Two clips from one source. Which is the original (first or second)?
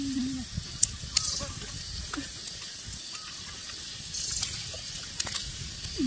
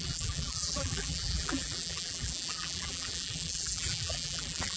first